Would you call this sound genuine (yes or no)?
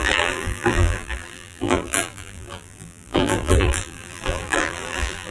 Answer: no